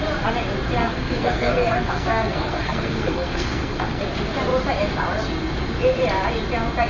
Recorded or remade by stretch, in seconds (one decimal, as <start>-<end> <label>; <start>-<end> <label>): 0.0-0.8 recorded; 0.8-4.0 remade; 4.0-6.9 recorded